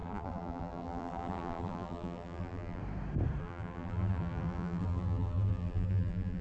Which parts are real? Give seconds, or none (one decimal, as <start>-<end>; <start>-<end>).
2.8-3.4